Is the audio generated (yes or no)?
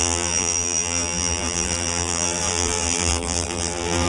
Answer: yes